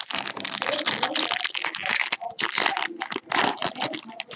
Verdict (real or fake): fake